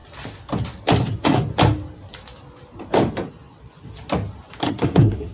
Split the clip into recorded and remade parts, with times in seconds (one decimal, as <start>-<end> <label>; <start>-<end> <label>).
0.0-1.1 recorded; 1.1-1.5 remade; 1.5-4.7 recorded; 4.7-5.3 remade